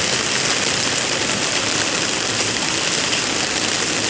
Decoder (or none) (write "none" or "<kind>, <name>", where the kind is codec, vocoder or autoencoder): none